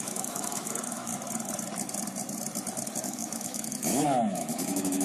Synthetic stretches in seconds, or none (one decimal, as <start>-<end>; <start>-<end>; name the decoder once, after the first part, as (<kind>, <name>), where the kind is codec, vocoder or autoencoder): 0.0-1.1 (autoencoder, DAC-VAE); 3.0-5.0